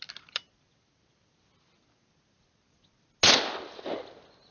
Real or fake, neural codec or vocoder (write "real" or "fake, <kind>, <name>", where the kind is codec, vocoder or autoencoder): real